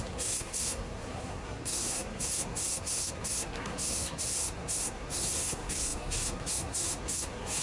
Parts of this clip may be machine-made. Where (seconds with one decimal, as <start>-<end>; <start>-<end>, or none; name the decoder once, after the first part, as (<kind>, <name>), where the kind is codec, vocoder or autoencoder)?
0.0-7.6 (codec, SNAC)